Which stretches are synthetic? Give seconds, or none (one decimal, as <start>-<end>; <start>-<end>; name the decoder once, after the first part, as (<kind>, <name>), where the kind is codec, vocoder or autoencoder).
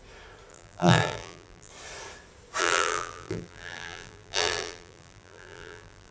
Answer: 0.5-1.7 (vocoder, BigVGAN v2); 2.6-6.1